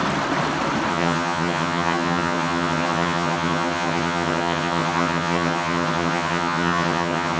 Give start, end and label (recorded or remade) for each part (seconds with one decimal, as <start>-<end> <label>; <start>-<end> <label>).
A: 0.0-0.9 recorded; 0.9-7.4 remade